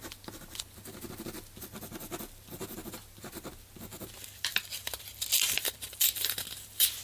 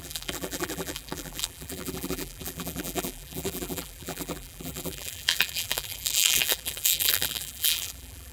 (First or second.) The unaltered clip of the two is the first